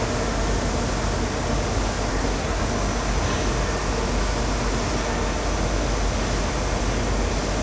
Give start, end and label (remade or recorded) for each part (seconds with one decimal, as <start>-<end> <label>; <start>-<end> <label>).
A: 0.0-2.1 recorded; 2.1-2.6 remade; 2.6-7.6 recorded